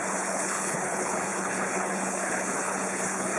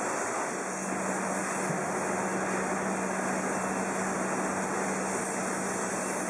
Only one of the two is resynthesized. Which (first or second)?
first